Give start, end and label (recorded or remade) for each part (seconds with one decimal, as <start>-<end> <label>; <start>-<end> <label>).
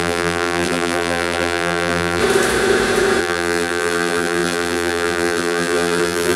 0.0-2.2 remade; 2.2-3.2 recorded; 3.2-6.4 remade